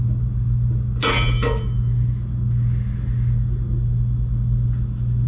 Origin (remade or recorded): recorded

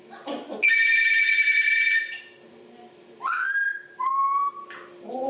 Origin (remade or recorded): recorded